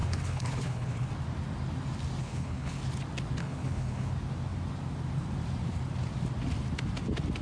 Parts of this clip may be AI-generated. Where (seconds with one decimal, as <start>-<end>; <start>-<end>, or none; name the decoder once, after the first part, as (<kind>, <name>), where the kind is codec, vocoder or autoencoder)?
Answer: 0.0-1.1 (codec, HILCodec); 2.2-2.8; 3.4-4.1